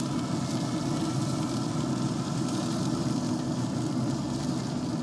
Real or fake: real